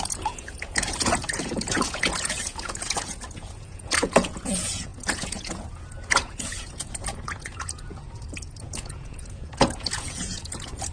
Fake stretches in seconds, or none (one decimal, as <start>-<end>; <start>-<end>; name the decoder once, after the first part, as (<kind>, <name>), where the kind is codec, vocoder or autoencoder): 0.0-10.9 (vocoder, Vocos)